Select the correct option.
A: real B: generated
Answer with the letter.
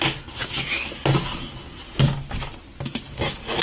A